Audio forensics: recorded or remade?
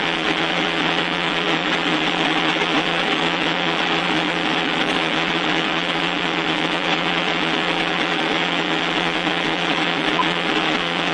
remade